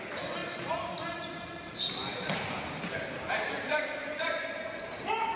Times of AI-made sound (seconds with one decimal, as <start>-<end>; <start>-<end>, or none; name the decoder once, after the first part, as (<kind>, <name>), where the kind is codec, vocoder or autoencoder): none